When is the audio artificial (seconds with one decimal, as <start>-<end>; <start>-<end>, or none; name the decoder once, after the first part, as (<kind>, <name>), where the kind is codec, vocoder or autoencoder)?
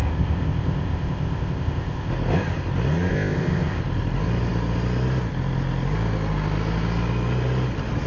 0.0-2.1 (codec, ZipCodec); 3.1-3.8